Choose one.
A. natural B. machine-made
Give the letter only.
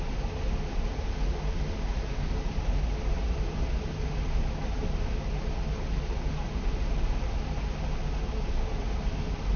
A